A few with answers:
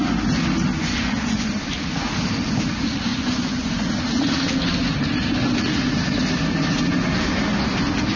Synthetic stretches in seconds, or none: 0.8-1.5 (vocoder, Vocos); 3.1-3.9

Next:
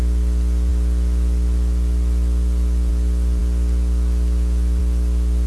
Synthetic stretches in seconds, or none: none

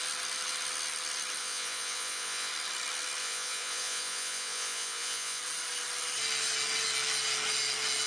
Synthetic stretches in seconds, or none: 1.4-2.5 (vocoder, Vocos); 3.2-5.4

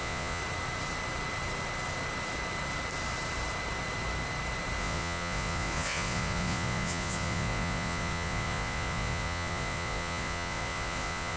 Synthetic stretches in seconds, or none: 0.0-0.4 (vocoder, Vocos); 4.8-11.4